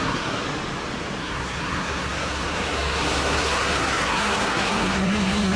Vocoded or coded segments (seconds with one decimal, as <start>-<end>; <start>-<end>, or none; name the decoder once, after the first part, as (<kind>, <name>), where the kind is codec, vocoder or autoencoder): 0.0-0.4 (codec, SNAC); 1.2-5.6